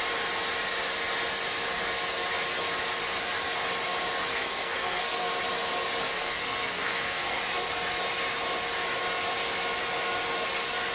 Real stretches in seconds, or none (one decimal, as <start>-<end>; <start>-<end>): 0.0-4.3; 5.3-6.0; 7.4-10.9